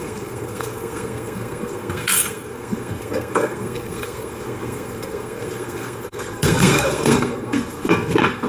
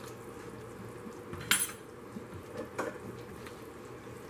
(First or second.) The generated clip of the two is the first